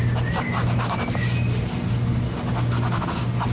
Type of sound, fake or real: real